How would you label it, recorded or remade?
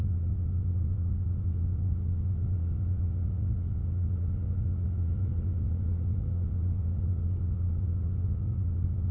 remade